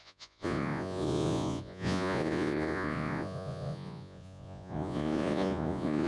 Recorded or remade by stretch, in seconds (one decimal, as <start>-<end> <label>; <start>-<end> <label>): 0.0-6.1 remade